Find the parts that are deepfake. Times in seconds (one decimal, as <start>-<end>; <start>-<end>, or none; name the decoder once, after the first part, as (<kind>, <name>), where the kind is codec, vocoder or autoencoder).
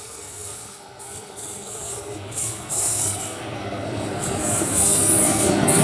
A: 0.0-5.8 (codec, SNAC)